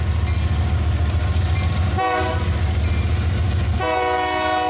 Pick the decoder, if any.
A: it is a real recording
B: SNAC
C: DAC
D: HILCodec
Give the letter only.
A